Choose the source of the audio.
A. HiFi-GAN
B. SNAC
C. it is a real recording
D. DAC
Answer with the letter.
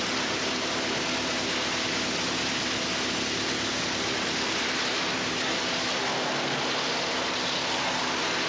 C